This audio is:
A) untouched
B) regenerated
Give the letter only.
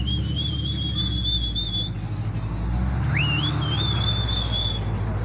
A